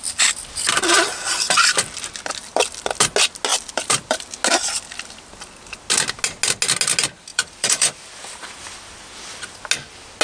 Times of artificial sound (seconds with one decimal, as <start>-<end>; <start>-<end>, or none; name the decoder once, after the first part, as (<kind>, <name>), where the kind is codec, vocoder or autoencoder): 2.4-2.9 (vocoder, BigVGAN v2); 3.5-4.4; 7.3-9.6